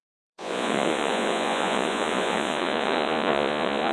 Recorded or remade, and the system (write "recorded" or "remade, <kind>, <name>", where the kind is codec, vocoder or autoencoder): remade, vocoder, Vocos